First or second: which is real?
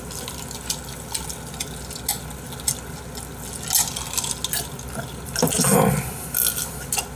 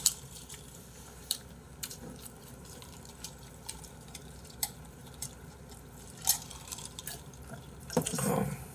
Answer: first